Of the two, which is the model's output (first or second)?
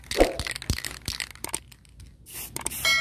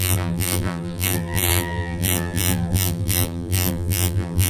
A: second